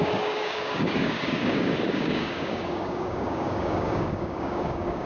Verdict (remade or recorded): remade